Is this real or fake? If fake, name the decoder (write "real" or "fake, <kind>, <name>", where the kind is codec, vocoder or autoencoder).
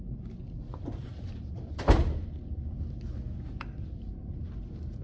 real